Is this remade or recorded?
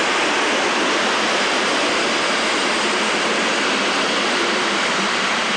recorded